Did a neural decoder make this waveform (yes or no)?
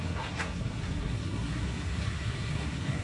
yes